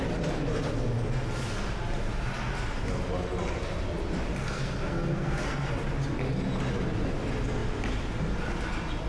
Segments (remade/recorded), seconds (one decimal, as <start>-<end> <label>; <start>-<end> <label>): 0.0-4.4 recorded; 4.4-5.7 remade; 5.7-9.1 recorded